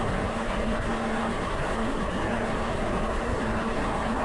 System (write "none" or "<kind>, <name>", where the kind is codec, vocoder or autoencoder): codec, SNAC